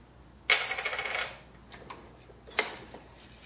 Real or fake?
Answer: real